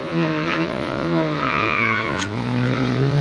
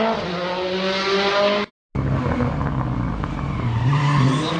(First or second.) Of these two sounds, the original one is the second